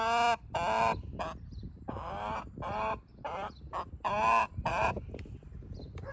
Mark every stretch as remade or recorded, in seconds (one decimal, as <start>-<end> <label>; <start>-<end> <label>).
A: 0.0-0.9 recorded; 0.9-3.6 remade; 3.6-4.7 recorded; 4.7-6.1 remade